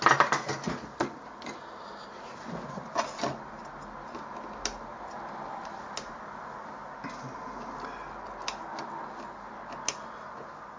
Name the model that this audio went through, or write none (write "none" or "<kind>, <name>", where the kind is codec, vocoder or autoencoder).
none